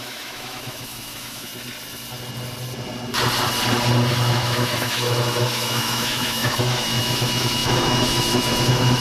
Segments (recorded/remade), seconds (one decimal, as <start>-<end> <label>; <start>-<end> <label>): 0.0-1.5 remade; 1.5-4.1 recorded; 4.1-9.0 remade